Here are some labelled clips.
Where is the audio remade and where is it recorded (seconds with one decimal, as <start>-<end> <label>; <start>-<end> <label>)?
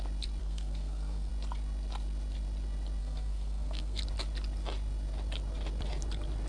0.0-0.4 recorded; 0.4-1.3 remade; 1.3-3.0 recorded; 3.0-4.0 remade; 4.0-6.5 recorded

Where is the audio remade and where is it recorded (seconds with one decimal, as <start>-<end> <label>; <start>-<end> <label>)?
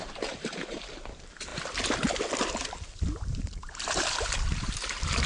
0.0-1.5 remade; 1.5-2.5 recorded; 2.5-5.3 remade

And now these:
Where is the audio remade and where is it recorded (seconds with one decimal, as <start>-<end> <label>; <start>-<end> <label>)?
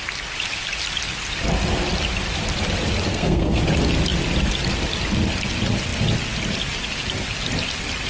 0.0-3.1 recorded; 3.1-3.6 remade; 3.6-8.1 recorded